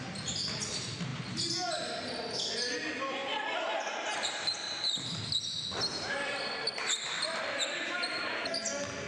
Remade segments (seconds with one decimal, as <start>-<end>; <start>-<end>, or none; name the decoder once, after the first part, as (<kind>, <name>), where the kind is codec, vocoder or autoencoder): 3.2-8.4 (vocoder, BigVGAN v2)